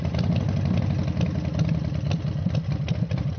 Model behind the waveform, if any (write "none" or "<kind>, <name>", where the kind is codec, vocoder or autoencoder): none